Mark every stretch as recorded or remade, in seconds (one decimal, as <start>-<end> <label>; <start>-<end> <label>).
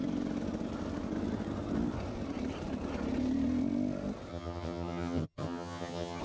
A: 0.0-4.3 recorded; 4.3-6.2 remade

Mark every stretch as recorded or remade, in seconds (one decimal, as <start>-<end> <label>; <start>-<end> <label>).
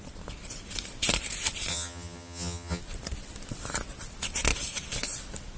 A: 0.0-1.7 recorded; 1.7-2.8 remade; 2.8-5.6 recorded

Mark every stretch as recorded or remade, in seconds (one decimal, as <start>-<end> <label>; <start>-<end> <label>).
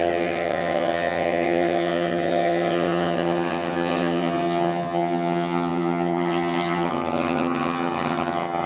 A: 0.0-8.7 remade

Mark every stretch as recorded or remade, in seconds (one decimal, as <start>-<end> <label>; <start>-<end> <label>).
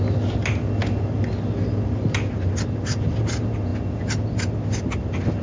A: 0.0-5.4 recorded